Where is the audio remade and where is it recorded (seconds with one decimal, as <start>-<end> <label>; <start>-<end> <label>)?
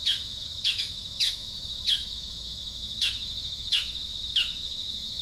0.0-5.2 remade